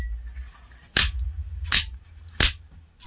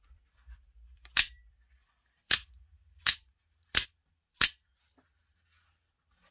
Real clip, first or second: first